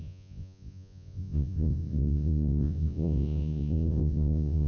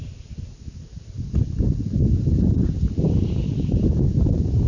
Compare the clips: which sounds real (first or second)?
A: second